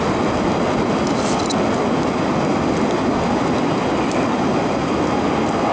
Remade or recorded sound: recorded